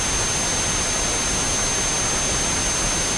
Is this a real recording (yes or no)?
yes